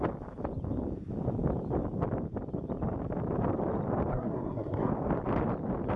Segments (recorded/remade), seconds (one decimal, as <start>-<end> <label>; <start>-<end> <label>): 0.0-4.1 recorded; 4.1-4.9 remade; 4.9-6.0 recorded